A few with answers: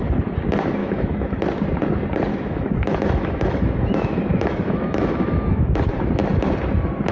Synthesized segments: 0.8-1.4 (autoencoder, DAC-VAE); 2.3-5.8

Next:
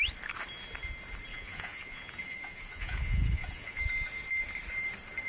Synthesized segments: 1.3-3.8 (vocoder, Vocos)

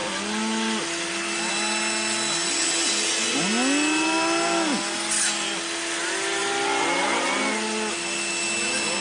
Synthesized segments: none

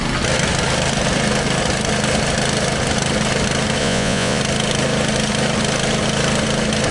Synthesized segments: 3.8-4.4 (vocoder, Vocos)